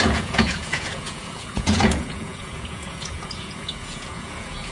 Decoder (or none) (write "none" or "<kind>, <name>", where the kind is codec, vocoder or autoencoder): vocoder, Vocos